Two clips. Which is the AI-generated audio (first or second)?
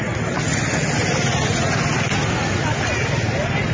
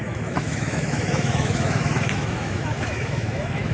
second